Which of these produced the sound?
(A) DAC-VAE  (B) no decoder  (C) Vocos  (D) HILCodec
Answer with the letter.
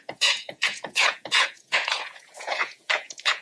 C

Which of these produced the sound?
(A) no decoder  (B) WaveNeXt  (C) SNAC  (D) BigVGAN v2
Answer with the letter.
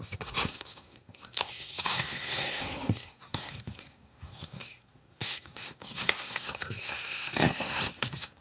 C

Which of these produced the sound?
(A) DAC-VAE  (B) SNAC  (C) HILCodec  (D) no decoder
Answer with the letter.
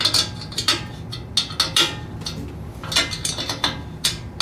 D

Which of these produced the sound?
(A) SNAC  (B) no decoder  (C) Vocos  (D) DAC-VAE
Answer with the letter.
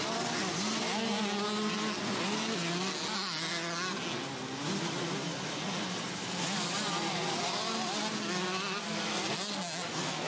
B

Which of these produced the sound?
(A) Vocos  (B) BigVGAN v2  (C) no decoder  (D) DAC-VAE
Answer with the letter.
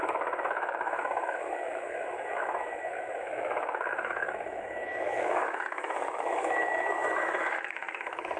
D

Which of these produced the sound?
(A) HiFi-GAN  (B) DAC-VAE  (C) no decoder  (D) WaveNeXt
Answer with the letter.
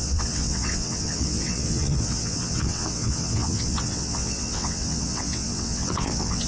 D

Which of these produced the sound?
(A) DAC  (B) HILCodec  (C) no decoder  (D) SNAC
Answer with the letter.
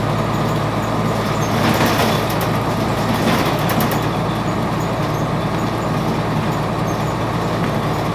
C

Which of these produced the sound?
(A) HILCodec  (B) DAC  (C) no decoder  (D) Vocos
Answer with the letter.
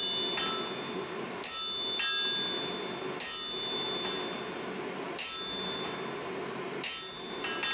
C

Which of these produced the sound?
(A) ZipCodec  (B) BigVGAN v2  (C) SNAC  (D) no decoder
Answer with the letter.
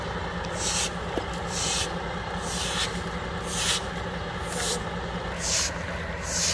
D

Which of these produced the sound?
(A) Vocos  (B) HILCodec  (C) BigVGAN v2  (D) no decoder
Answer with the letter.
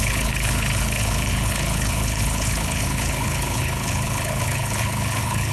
B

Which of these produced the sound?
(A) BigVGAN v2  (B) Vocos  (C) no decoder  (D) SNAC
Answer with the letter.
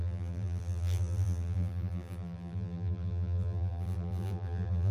A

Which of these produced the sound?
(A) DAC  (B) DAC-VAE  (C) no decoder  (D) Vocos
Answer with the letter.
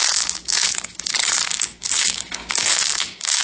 A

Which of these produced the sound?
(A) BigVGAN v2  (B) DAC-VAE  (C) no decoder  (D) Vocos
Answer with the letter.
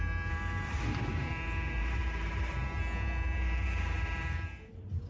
A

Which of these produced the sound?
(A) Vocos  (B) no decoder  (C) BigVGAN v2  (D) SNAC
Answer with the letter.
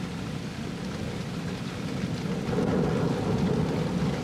B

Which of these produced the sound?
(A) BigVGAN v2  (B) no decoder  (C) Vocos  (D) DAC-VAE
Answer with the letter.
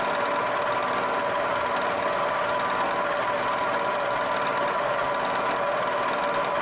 B